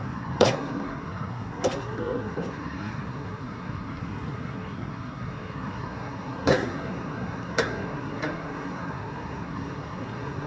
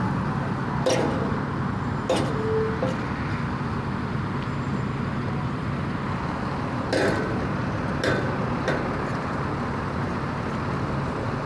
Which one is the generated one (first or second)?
first